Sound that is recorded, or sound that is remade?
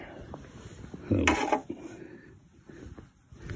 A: recorded